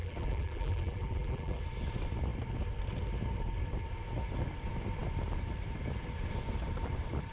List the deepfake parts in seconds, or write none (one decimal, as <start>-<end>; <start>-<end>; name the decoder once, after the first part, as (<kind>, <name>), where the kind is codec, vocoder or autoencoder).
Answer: 0.0-1.6 (vocoder, BigVGAN v2)